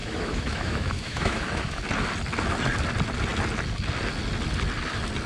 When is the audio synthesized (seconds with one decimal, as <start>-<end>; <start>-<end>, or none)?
0.0-1.8